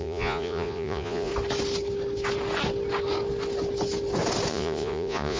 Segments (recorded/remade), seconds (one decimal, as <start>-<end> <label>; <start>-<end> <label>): 0.0-1.3 remade; 1.3-4.5 recorded; 4.5-5.4 remade

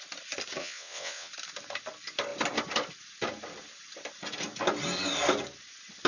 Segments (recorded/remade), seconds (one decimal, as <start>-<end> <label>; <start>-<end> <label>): 0.0-0.6 recorded; 0.6-1.3 remade; 1.3-6.1 recorded

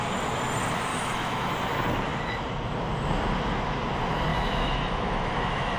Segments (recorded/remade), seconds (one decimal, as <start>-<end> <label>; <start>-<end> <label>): 0.0-0.9 recorded; 0.9-1.5 remade; 1.5-4.3 recorded; 4.3-5.8 remade

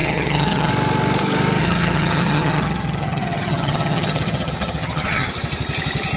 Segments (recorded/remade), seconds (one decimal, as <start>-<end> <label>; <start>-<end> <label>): 0.0-0.7 remade; 0.7-1.6 recorded; 1.6-5.3 remade; 5.3-6.2 recorded

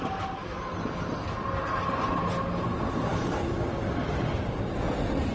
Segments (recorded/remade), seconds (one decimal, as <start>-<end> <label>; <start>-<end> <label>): 0.0-5.3 recorded

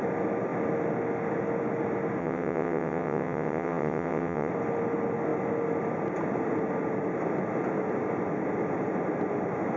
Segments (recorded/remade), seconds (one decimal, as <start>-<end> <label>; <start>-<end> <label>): 0.0-2.2 recorded; 2.2-4.5 remade; 4.5-9.8 recorded

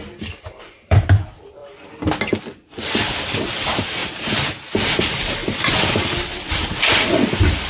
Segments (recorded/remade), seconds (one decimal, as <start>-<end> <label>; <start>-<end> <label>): 0.0-1.6 remade; 1.6-3.2 recorded; 3.2-4.0 remade; 4.0-5.0 recorded; 5.0-5.4 remade; 5.4-6.5 recorded; 6.5-7.7 remade

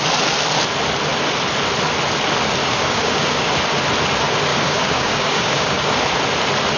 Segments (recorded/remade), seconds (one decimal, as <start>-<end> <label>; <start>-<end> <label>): 0.0-2.6 recorded; 2.6-3.5 remade; 3.5-4.5 recorded; 4.5-6.0 remade; 6.0-6.8 recorded